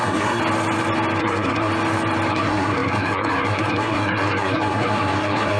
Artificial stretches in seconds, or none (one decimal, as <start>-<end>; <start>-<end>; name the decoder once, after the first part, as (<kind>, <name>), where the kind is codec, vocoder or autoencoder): 0.0-0.4 (codec, SNAC); 1.2-1.7; 2.3-5.6